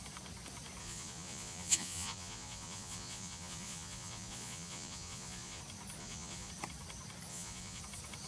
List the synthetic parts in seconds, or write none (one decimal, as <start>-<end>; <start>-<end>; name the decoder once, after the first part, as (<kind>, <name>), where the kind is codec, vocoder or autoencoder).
0.8-5.6 (vocoder, Vocos); 6.0-6.5; 7.3-7.8